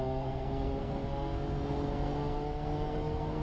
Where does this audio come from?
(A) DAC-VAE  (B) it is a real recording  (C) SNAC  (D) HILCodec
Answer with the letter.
C